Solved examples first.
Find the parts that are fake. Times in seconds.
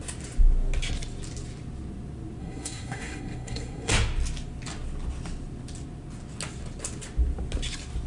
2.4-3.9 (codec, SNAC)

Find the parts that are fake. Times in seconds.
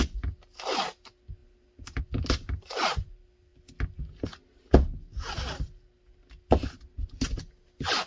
none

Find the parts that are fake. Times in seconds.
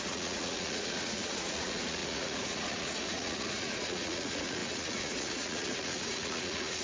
0.0-6.8 (vocoder, Vocos)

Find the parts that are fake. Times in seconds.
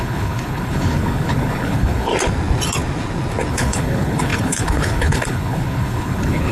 0.0-2.1 (codec, HILCodec); 3.5-6.5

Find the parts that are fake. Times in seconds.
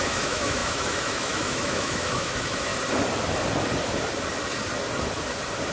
0.0-2.7 (autoencoder, DAC-VAE)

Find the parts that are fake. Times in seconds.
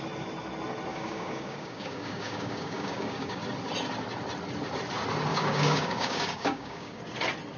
0.9-3.4 (codec, DAC); 5.3-7.0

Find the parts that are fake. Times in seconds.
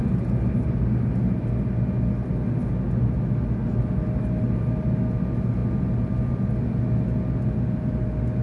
none